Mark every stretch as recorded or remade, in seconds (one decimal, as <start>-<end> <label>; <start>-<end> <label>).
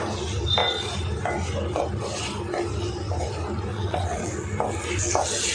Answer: 0.0-3.7 recorded; 3.7-4.3 remade; 4.3-5.5 recorded